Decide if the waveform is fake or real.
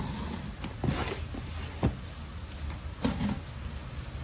real